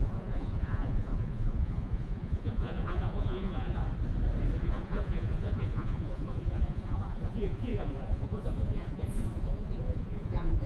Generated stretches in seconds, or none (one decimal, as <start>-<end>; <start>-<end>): 0.0-3.8; 4.6-10.7